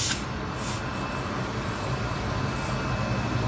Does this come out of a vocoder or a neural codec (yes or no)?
no